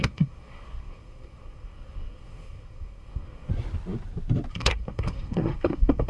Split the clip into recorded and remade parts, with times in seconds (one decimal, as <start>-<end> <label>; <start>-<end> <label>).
0.0-3.5 remade; 3.5-4.5 recorded; 4.5-6.1 remade

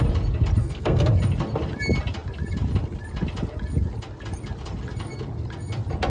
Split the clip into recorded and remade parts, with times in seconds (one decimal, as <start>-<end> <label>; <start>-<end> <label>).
0.0-0.6 recorded; 0.6-1.1 remade; 1.1-6.1 recorded

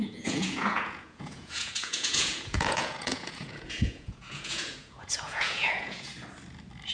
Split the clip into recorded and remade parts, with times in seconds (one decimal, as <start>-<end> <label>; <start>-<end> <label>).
0.0-6.1 remade; 6.1-6.9 recorded

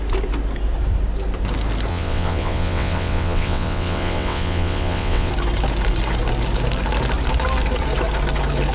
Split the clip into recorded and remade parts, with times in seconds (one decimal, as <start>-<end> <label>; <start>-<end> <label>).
0.0-1.9 recorded; 1.9-5.3 remade; 5.3-8.7 recorded

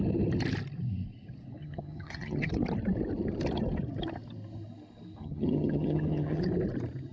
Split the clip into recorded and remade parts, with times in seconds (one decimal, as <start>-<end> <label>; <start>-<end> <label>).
0.0-1.6 recorded; 1.6-2.5 remade; 2.5-5.2 recorded; 5.2-6.4 remade; 6.4-7.1 recorded

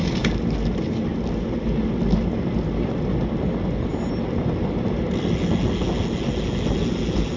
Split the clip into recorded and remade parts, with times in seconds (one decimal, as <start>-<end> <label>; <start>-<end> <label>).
0.0-7.4 recorded